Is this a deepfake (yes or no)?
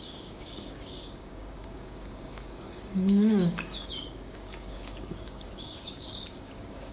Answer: yes